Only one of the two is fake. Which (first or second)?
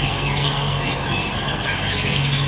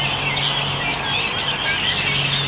first